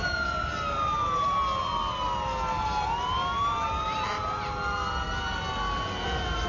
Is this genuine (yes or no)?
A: yes